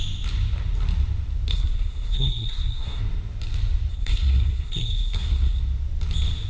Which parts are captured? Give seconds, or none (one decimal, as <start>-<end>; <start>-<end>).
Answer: 0.0-1.5; 3.0-3.9; 5.6-6.5